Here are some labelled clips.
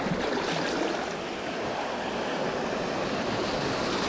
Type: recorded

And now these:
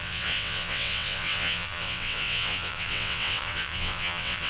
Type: remade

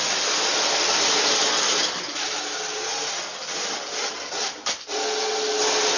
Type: recorded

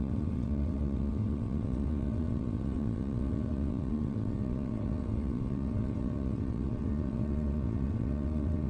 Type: remade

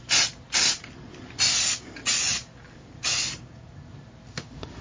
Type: recorded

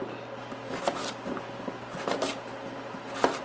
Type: recorded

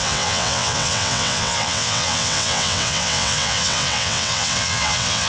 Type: remade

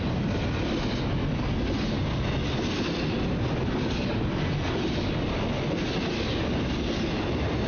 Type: recorded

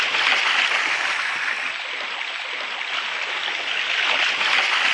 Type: recorded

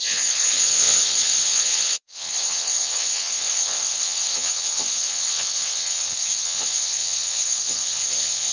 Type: remade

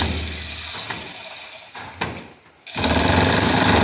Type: recorded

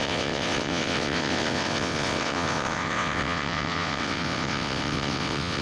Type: remade